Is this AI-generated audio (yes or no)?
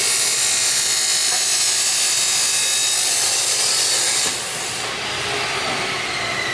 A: no